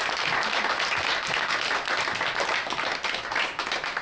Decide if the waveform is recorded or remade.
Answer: recorded